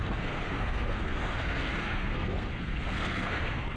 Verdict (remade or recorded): remade